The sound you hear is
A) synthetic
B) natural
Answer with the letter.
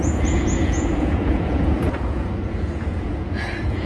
A